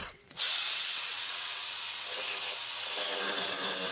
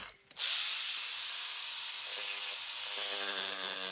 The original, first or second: second